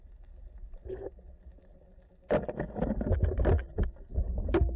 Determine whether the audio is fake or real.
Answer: real